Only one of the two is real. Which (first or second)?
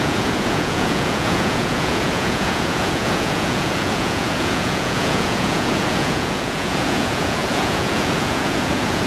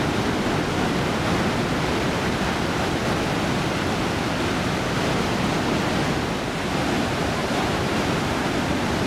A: second